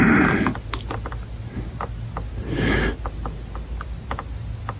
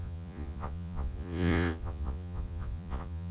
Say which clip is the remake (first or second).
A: second